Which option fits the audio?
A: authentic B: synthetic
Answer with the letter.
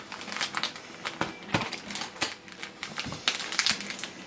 A